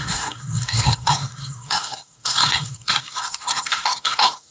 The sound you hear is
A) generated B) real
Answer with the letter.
A